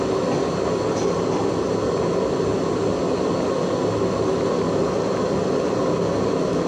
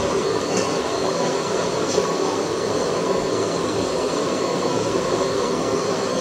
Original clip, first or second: first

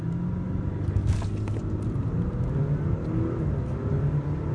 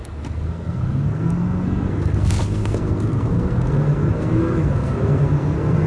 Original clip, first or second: first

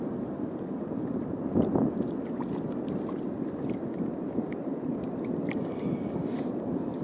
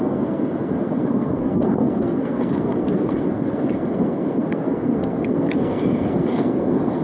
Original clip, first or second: first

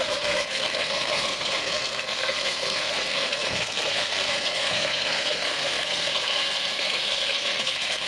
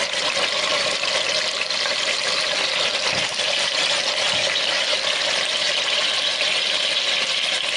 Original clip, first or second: second